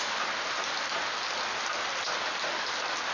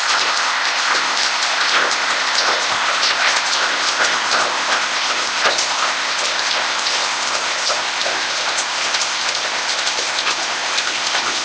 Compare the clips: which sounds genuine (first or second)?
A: first